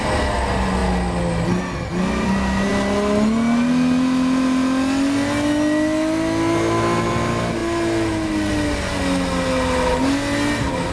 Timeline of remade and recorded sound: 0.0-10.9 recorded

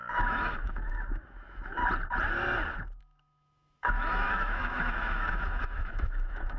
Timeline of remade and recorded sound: 0.0-1.8 remade; 1.8-3.0 recorded; 3.0-6.6 remade

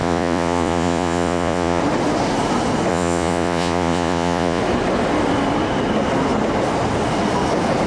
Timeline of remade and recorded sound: 0.0-1.8 remade; 1.8-2.9 recorded; 2.9-4.6 remade; 4.6-7.9 recorded

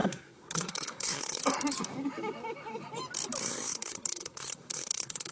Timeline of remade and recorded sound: 0.0-1.4 remade; 1.4-3.4 recorded; 3.4-5.3 remade

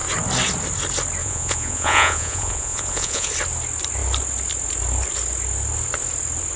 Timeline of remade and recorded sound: 0.0-1.2 recorded; 1.2-3.3 remade; 3.3-6.6 recorded

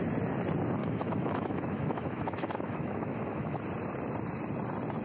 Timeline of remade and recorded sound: 0.0-0.8 recorded; 0.8-3.6 remade; 3.6-5.0 recorded

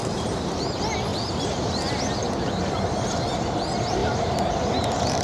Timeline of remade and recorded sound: 0.0-0.7 remade; 0.7-4.0 recorded; 4.0-4.5 remade; 4.5-5.2 recorded

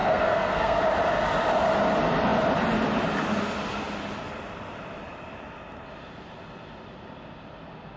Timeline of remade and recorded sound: 0.0-0.8 remade; 0.8-8.0 recorded